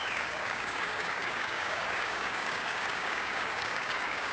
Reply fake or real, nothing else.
fake